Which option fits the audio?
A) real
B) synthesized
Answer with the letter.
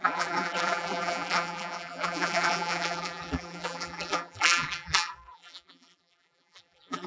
B